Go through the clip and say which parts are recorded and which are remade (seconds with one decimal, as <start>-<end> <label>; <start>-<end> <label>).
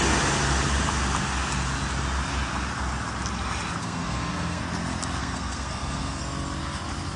0.0-3.8 recorded; 3.8-4.6 remade; 4.6-5.2 recorded; 5.2-6.2 remade; 6.2-7.2 recorded